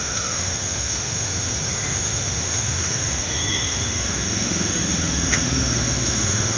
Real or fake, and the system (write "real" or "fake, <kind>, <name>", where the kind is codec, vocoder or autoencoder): fake, autoencoder, DAC-VAE